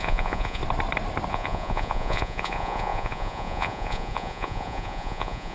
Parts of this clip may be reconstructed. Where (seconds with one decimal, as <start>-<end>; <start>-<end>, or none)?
0.0-0.6; 1.3-5.5